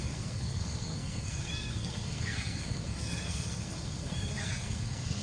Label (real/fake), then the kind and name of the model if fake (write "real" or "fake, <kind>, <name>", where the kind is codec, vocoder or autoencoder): fake, codec, SNAC